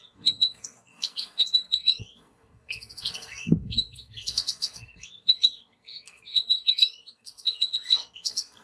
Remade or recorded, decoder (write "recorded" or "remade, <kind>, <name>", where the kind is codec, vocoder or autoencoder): remade, codec, SNAC